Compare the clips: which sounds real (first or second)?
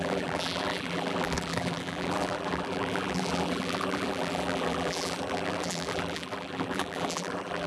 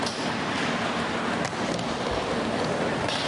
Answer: second